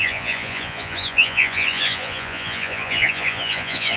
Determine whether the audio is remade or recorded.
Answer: remade